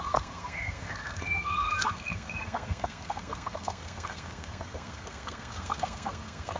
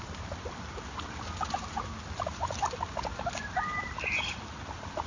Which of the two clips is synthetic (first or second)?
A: first